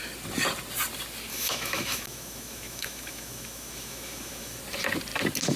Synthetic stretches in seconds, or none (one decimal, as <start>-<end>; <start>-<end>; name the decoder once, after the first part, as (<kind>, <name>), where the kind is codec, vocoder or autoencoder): 1.3-4.6 (autoencoder, DAC-VAE)